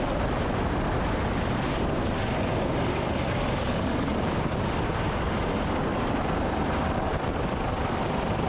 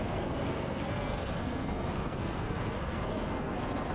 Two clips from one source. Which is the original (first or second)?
first